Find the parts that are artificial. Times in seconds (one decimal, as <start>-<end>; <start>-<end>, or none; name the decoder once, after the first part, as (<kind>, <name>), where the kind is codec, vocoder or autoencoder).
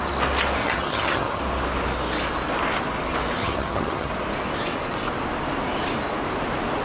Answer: 0.6-1.4 (vocoder, HiFi-GAN); 3.4-4.1